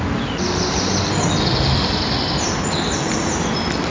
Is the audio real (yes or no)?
yes